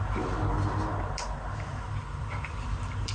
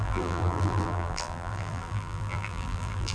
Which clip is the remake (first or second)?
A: second